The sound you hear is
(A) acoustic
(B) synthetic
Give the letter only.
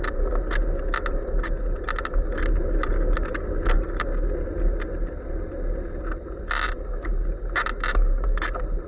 A